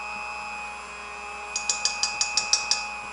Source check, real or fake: real